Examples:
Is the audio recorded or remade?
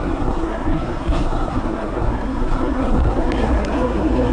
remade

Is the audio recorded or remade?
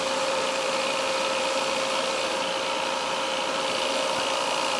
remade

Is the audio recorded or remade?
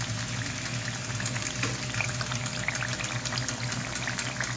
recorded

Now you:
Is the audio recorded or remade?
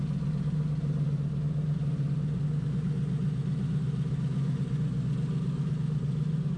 recorded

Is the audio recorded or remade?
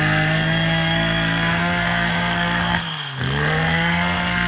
remade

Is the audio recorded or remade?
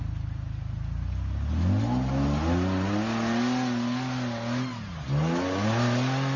recorded